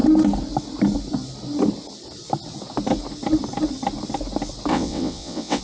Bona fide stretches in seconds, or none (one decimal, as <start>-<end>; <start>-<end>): 0.0-4.7